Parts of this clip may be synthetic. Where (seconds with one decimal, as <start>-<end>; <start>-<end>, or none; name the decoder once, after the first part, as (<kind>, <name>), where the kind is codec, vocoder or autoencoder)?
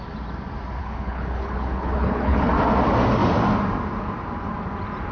0.8-2.5 (codec, HILCodec)